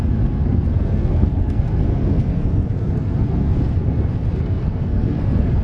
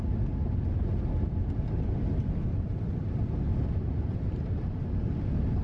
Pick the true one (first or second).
second